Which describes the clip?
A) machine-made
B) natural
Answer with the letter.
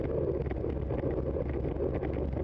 B